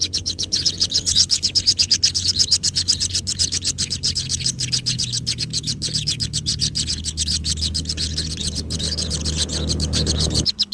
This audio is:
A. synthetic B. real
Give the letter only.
A